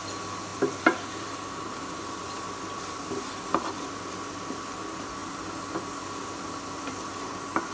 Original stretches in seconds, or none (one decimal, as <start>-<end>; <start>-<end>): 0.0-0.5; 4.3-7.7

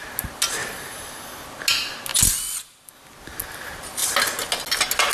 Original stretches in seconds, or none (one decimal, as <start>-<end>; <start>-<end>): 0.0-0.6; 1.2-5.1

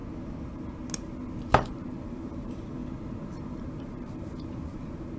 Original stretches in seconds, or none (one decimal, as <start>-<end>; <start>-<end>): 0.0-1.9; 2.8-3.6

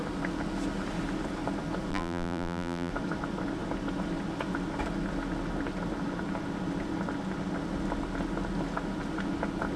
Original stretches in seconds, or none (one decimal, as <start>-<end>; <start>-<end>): 0.0-1.9; 2.9-9.8